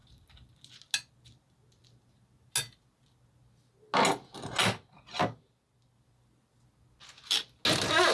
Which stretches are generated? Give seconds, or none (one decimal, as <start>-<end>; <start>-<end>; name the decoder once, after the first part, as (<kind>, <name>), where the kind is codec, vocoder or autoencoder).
none